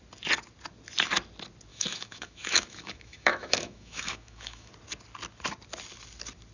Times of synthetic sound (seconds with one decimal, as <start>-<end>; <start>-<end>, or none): 1.7-4.7